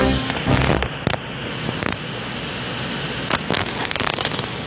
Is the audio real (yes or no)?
yes